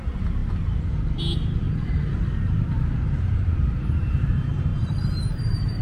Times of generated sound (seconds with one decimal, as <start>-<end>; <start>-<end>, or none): 0.0-0.4; 3.2-4.7; 5.3-5.8